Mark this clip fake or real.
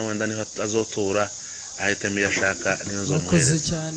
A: real